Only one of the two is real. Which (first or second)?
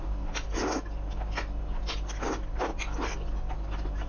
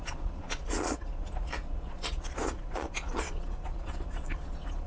first